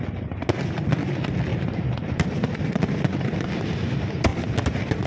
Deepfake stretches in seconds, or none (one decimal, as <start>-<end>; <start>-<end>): 1.5-2.8

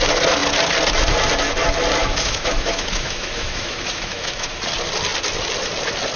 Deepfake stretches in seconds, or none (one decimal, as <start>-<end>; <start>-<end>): 2.0-4.5

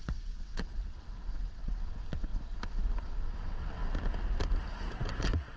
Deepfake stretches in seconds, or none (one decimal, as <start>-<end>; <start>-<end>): 0.0-2.3; 3.0-3.8; 4.9-5.6

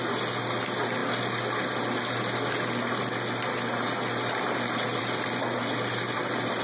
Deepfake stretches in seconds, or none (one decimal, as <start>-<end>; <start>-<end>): none